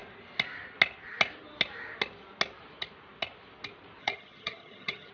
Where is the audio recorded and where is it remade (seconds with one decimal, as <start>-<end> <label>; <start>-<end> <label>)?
0.0-4.0 recorded; 4.0-5.1 remade